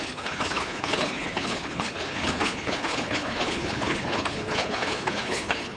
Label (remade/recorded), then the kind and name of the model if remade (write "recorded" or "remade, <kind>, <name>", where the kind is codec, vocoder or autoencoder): remade, codec, HILCodec